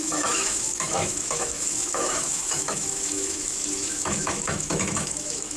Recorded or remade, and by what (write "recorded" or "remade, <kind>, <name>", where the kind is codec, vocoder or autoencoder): remade, autoencoder, DAC-VAE